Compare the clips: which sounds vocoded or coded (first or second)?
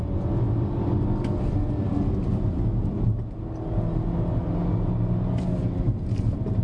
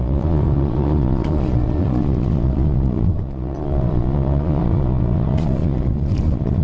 second